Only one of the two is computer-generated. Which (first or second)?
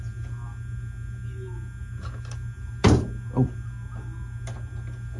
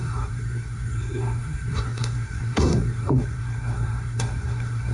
second